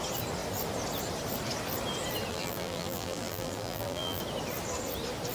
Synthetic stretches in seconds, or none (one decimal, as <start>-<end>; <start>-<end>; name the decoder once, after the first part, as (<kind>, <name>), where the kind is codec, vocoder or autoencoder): 2.3-4.2 (vocoder, BigVGAN v2)